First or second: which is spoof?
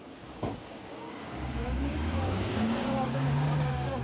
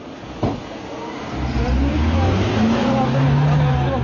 first